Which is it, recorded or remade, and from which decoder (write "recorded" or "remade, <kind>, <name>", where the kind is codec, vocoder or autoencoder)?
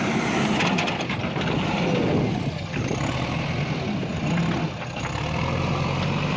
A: recorded